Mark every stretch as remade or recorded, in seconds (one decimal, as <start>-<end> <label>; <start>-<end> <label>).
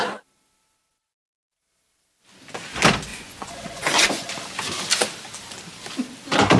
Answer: 0.0-3.1 recorded; 3.1-4.3 remade; 4.3-6.6 recorded